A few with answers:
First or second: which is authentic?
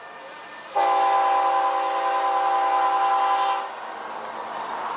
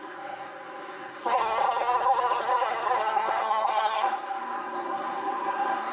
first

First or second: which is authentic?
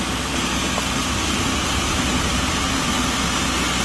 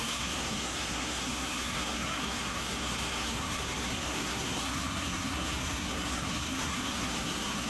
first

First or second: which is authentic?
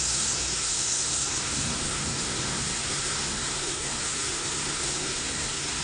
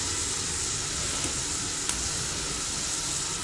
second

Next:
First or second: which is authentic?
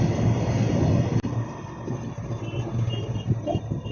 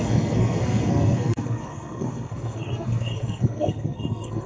first